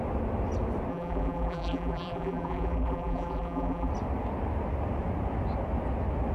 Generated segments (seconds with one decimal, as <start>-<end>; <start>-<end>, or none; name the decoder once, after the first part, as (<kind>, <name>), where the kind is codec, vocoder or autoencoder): 0.9-3.9 (vocoder, BigVGAN v2)